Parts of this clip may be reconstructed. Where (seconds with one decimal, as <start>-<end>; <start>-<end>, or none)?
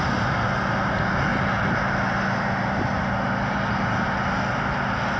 none